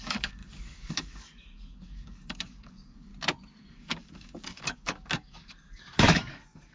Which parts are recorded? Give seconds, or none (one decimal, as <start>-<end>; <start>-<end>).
3.1-3.7